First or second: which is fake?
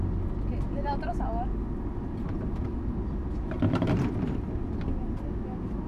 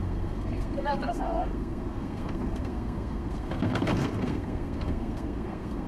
second